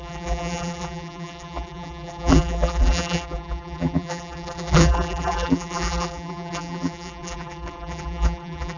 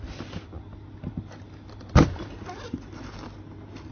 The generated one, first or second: first